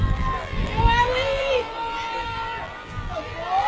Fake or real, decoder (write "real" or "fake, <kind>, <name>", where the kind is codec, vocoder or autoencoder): fake, vocoder, BigVGAN v2